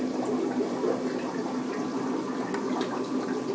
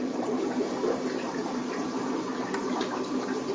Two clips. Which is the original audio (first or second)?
first